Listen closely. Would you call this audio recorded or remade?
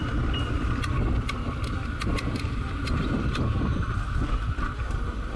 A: recorded